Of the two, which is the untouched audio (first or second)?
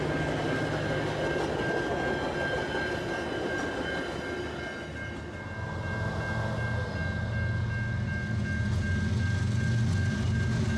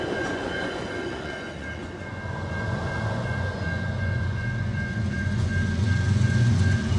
first